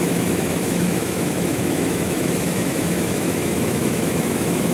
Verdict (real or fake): fake